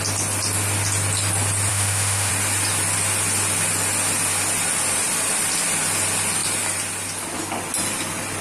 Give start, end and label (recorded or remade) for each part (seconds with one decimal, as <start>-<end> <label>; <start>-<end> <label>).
0.0-1.7 recorded; 1.7-2.3 remade; 2.3-8.4 recorded